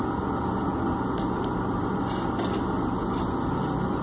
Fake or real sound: real